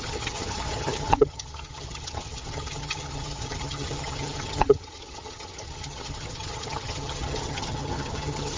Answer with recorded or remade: remade